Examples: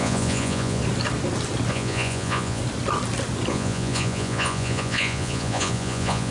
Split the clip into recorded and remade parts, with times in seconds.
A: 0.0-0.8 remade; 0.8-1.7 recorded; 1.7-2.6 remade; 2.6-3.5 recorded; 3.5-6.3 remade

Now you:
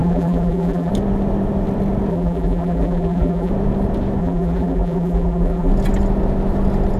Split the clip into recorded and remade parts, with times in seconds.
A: 0.0-0.9 remade; 0.9-2.1 recorded; 2.1-3.5 remade; 3.5-4.2 recorded; 4.2-5.7 remade; 5.7-7.0 recorded

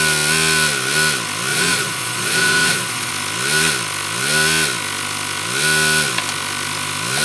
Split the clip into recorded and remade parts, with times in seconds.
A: 0.0-1.5 recorded; 1.5-3.1 remade; 3.1-7.2 recorded

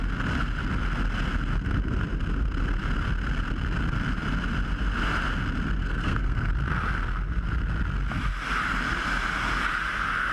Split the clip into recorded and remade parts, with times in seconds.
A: 0.0-5.8 recorded; 5.8-6.5 remade; 6.5-10.3 recorded